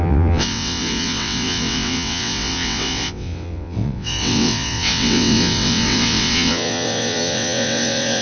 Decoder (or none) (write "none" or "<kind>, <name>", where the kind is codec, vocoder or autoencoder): vocoder, WaveNeXt